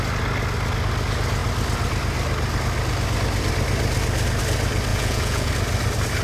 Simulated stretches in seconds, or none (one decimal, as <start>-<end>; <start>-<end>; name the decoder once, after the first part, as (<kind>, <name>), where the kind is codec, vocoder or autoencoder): 4.9-5.5 (vocoder, Vocos)